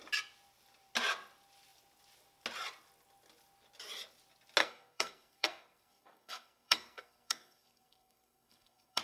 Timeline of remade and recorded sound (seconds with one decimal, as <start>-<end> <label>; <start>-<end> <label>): 0.0-4.6 recorded; 4.6-9.0 remade